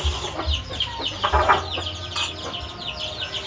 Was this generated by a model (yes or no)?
no